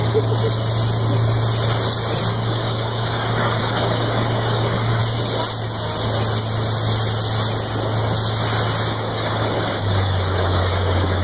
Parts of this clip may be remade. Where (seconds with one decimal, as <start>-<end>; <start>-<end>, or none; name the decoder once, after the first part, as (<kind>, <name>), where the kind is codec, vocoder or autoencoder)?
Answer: 2.3-5.0 (codec, DAC); 8.9-11.2